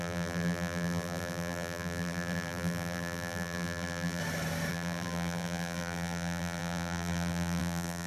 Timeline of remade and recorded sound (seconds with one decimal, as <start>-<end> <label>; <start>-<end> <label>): 0.0-4.2 remade; 4.2-4.7 recorded; 4.7-8.1 remade